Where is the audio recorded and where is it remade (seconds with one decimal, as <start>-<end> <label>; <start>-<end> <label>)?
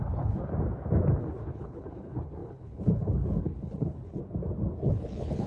0.0-0.5 remade; 0.5-1.2 recorded; 1.2-4.2 remade; 4.2-4.8 recorded; 4.8-5.5 remade